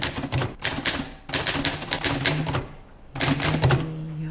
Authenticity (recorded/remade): recorded